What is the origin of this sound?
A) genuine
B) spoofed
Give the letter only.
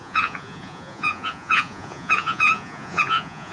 B